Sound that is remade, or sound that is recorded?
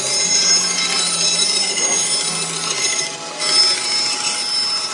recorded